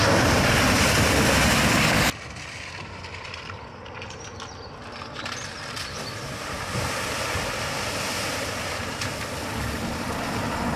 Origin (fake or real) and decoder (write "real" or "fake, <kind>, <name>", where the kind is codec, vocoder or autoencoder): real